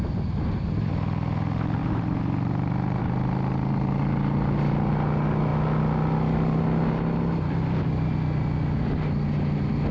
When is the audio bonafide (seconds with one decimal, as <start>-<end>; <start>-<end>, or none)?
0.0-1.8; 3.0-9.9